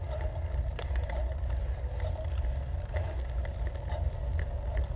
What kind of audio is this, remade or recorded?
recorded